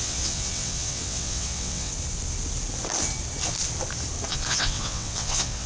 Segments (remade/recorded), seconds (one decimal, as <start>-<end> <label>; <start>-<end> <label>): 0.0-1.9 remade; 1.9-4.3 recorded; 4.3-5.7 remade